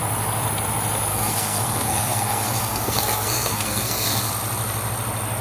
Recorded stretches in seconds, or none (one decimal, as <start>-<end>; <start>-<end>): 0.0-1.1; 4.3-5.4